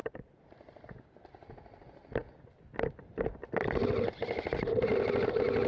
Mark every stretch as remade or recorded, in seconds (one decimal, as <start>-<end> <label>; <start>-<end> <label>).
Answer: 0.0-2.2 recorded; 2.2-3.7 remade; 3.7-5.7 recorded